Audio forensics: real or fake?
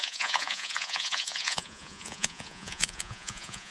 fake